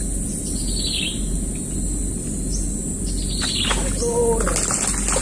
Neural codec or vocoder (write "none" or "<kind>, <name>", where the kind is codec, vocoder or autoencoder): none